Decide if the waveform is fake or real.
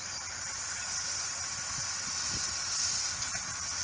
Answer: real